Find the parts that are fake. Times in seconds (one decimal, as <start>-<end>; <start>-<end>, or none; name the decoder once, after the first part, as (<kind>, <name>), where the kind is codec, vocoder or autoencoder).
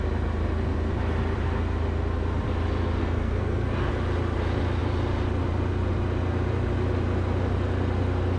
3.0-3.9 (codec, SNAC)